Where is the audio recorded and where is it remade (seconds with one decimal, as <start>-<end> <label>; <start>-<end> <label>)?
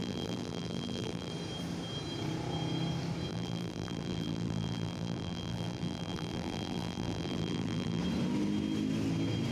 0.0-1.3 remade; 1.3-3.3 recorded; 3.3-8.0 remade; 8.0-9.5 recorded